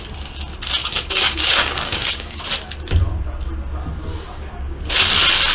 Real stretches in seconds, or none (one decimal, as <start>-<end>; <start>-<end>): 0.0-0.8; 2.4-4.3; 4.8-5.5